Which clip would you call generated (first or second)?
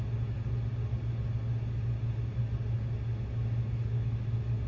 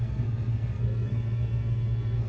second